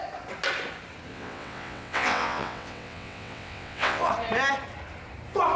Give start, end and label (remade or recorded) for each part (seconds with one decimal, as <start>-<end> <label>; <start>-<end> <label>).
0.0-1.1 recorded; 1.1-4.1 remade; 4.1-5.6 recorded